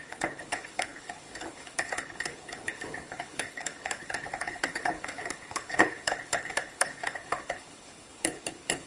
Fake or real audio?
fake